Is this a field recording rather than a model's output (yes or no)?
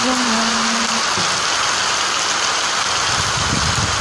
yes